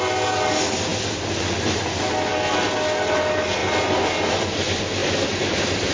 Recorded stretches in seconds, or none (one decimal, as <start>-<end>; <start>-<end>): 0.0-5.9

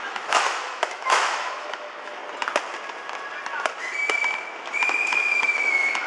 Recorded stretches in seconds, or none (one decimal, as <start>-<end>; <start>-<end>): 2.2-5.3

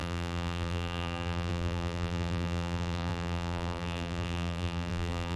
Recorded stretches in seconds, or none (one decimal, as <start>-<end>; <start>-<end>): none

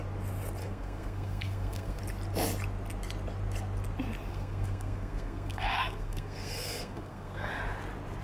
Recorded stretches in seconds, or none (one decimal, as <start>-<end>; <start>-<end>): 0.0-0.6; 2.0-4.3; 7.5-8.2

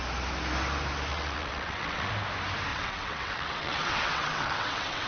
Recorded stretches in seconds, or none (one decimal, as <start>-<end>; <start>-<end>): 0.0-1.1; 2.1-2.7